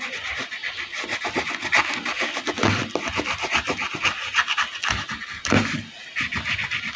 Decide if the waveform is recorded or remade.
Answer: recorded